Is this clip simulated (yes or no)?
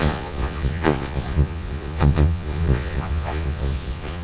yes